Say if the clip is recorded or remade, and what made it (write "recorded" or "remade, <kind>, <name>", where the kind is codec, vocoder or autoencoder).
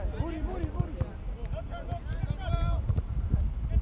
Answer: recorded